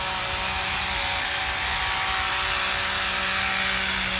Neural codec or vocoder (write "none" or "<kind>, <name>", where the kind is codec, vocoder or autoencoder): none